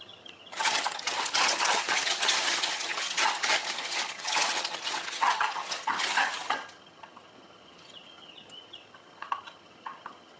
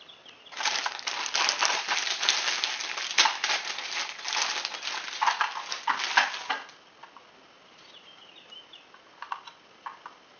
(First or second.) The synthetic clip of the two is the first